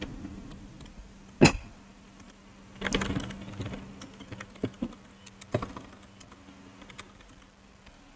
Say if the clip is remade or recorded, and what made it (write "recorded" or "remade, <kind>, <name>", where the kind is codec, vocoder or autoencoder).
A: recorded